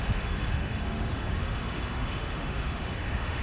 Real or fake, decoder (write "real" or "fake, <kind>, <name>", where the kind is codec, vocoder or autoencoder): fake, autoencoder, DAC-VAE